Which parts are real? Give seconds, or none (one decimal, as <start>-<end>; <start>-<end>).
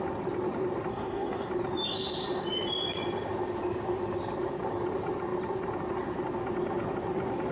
0.0-0.9; 1.5-7.5